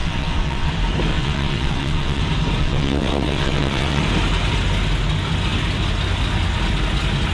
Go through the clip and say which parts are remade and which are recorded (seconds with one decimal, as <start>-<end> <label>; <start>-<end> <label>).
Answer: 0.0-0.7 remade; 0.7-1.1 recorded; 1.1-2.2 remade; 2.2-2.6 recorded; 2.6-4.0 remade; 4.0-7.3 recorded